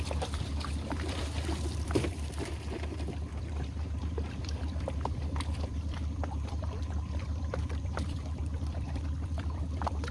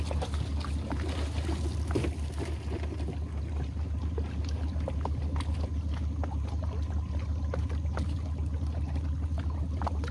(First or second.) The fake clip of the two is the first